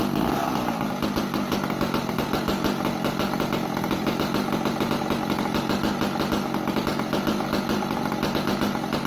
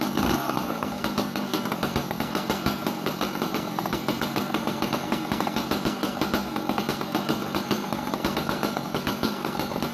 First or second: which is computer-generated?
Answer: second